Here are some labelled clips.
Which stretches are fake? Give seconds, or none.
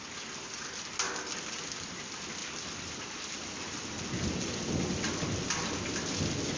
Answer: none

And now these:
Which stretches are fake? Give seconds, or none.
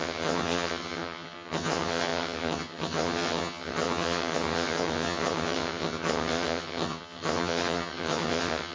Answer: 0.0-8.7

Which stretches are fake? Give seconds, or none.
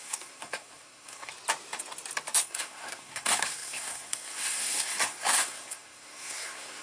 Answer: 0.0-1.3; 2.4-6.8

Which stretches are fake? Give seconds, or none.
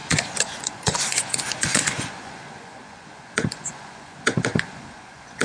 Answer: 0.0-5.4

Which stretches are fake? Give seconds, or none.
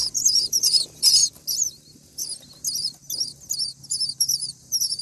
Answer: 0.0-1.2; 4.2-5.0